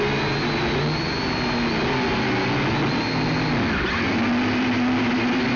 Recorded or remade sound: recorded